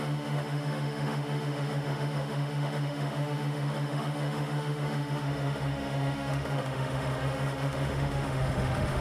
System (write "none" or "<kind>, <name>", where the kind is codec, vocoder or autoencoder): autoencoder, DAC-VAE